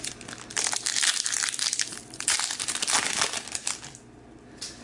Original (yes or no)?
yes